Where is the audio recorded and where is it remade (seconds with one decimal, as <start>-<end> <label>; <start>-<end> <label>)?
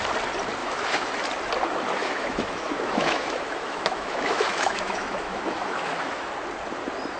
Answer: 0.0-0.6 recorded; 0.6-1.1 remade; 1.1-2.0 recorded; 2.0-6.3 remade; 6.3-7.2 recorded